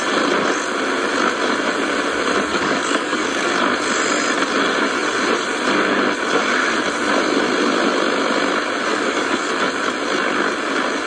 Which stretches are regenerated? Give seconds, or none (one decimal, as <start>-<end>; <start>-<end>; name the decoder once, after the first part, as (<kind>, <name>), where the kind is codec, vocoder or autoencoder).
2.5-3.5 (codec, DAC); 8.9-9.5